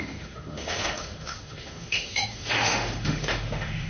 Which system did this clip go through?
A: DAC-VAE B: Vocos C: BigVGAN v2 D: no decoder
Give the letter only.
A